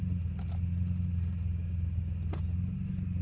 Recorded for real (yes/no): yes